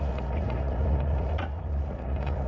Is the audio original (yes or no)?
no